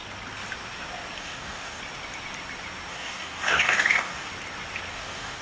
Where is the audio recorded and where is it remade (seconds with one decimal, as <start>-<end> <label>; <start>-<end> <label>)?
0.0-1.2 recorded; 1.2-1.8 remade; 1.8-2.9 recorded; 2.9-4.3 remade; 4.3-4.9 recorded; 4.9-5.4 remade